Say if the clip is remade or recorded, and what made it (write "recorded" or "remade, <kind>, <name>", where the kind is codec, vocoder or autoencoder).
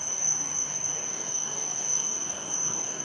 remade, codec, DAC